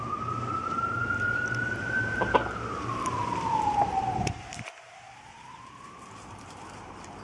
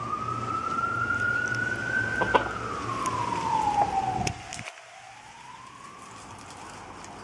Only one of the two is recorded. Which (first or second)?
second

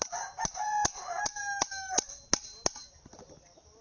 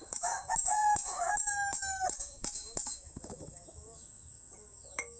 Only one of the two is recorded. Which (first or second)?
first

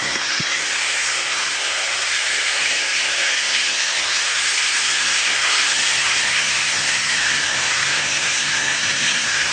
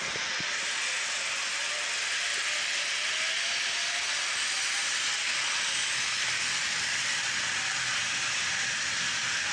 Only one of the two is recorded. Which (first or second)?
second